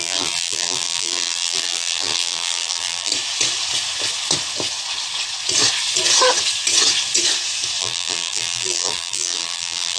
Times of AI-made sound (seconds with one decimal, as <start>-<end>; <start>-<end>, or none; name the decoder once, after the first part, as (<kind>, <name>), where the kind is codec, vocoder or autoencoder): 0.0-3.1 (vocoder, BigVGAN v2); 7.8-10.0